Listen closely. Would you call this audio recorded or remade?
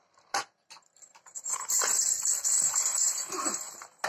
recorded